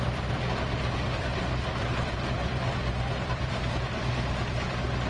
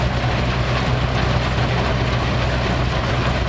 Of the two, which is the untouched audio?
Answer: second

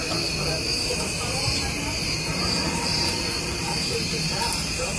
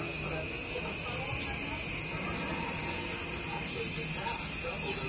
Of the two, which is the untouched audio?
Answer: second